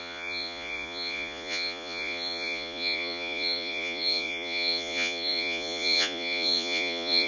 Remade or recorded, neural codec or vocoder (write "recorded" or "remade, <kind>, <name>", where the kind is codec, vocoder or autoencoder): remade, vocoder, Vocos